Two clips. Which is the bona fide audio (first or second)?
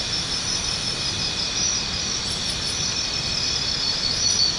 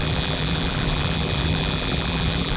first